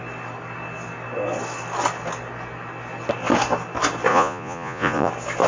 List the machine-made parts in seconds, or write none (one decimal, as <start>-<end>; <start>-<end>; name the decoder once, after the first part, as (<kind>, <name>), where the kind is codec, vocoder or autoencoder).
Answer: 4.1-5.1 (vocoder, Vocos)